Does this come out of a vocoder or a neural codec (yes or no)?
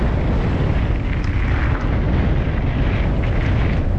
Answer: no